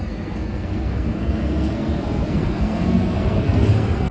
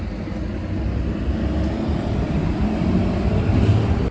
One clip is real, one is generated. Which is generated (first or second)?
first